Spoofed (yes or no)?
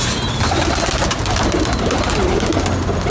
no